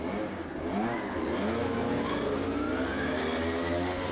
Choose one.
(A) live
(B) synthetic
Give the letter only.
A